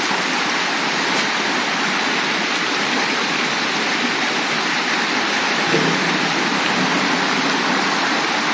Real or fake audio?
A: fake